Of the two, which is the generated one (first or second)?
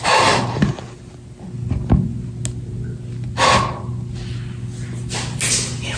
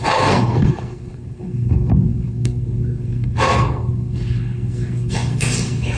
second